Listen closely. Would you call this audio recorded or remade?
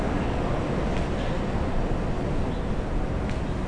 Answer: recorded